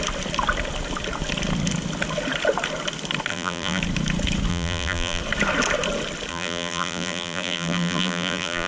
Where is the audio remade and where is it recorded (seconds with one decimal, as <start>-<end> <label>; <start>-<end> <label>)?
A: 0.0-3.3 recorded; 3.3-3.8 remade; 3.8-4.5 recorded; 4.5-5.2 remade; 5.2-6.3 recorded; 6.3-8.7 remade